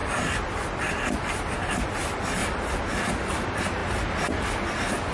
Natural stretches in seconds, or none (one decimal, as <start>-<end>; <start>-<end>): 0.0-2.4; 3.1-5.1